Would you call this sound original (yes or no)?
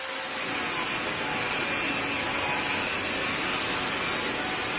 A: yes